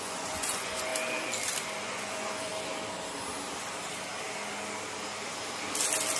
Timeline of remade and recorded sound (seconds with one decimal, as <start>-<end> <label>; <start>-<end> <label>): 0.0-0.9 remade; 0.9-1.8 recorded; 1.8-2.5 remade; 2.5-6.2 recorded

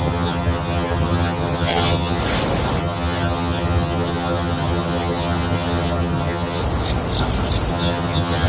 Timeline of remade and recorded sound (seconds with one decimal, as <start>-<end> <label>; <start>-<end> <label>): 0.0-2.2 remade; 2.2-2.8 recorded; 2.8-6.6 remade; 6.6-7.7 recorded; 7.7-8.5 remade